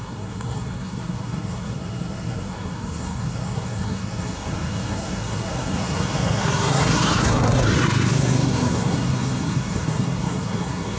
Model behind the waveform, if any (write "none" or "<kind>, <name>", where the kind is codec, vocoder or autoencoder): codec, SNAC